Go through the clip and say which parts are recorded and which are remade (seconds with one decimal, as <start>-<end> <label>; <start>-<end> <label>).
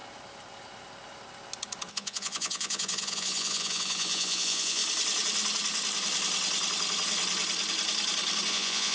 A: 0.0-1.9 recorded; 1.9-4.8 remade; 4.8-8.5 recorded; 8.5-8.9 remade